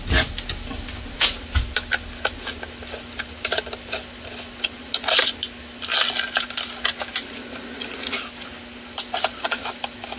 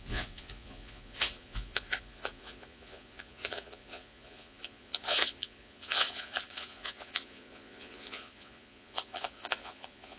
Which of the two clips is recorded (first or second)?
first